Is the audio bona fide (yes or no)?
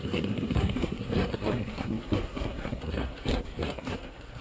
no